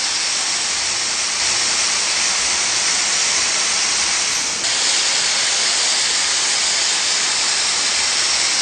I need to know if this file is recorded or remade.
recorded